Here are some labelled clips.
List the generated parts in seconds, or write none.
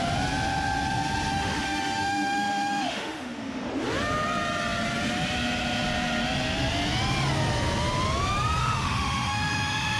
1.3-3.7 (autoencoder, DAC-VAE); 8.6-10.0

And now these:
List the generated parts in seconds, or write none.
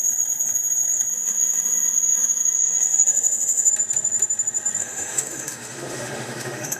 1.1-3.7 (autoencoder, DAC-VAE); 4.8-6.8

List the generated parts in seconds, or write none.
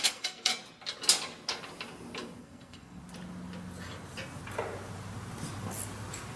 0.0-0.5 (codec, SNAC); 2.4-3.0